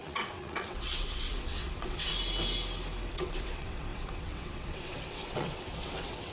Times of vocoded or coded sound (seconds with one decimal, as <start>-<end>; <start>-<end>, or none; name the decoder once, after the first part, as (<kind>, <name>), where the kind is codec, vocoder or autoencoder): 0.0-2.1 (vocoder, WaveNeXt); 3.1-6.3